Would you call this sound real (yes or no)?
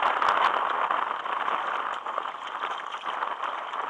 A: yes